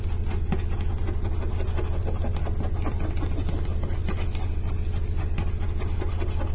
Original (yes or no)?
yes